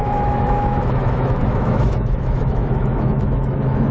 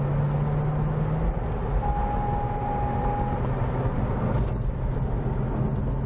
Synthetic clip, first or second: first